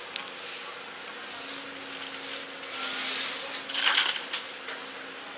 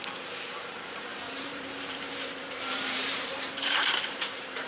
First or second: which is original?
first